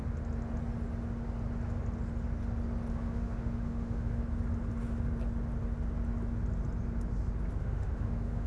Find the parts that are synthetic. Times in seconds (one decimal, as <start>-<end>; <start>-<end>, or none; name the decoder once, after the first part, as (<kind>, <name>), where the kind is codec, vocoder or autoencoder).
2.9-4.2 (autoencoder, DAC-VAE); 7.6-8.5